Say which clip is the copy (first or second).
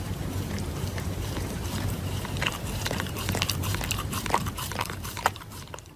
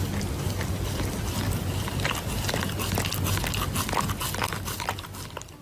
first